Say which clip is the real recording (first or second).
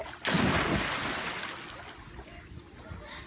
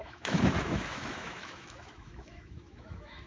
first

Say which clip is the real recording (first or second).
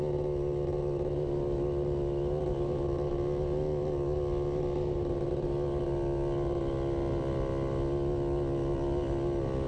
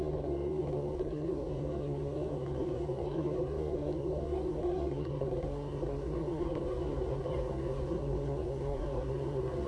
first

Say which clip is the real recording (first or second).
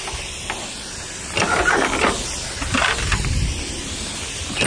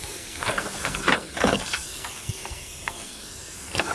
first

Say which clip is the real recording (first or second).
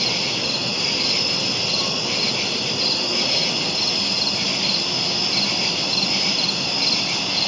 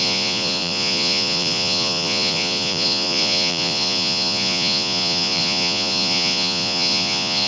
first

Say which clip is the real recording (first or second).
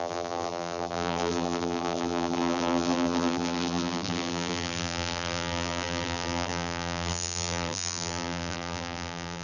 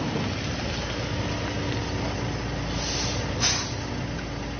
second